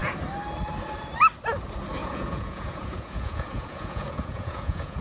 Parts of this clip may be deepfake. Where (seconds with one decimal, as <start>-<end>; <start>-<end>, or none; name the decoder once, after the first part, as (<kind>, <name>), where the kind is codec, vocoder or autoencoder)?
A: 2.0-5.0 (vocoder, Vocos)